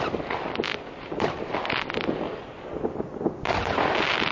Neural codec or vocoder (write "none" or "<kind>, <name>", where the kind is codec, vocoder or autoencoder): none